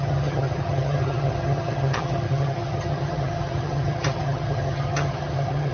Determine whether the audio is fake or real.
fake